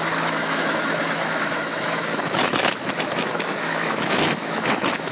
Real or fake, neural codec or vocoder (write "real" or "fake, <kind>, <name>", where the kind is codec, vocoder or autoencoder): fake, autoencoder, DAC-VAE